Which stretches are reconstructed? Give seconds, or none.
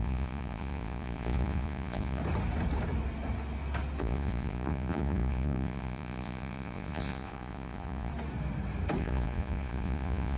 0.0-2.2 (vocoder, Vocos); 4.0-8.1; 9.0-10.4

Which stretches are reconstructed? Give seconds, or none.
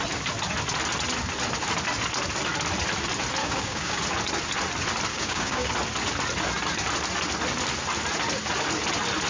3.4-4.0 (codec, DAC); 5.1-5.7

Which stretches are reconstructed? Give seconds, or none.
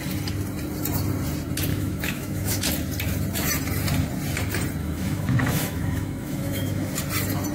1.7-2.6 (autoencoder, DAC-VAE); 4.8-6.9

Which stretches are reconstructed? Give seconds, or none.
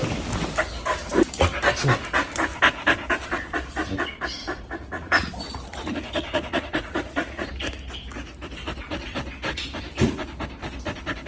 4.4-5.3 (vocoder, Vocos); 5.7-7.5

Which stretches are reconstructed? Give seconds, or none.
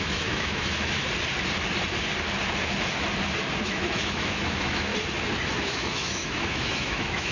0.0-1.0 (autoencoder, DAC-VAE); 3.6-4.9; 5.6-7.3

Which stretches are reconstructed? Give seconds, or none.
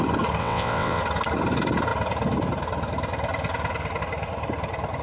0.4-1.0 (vocoder, WaveNeXt)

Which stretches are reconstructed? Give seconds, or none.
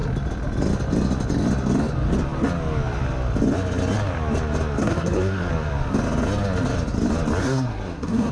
4.8-5.5 (codec, SNAC); 7.4-8.3